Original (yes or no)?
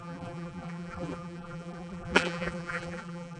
no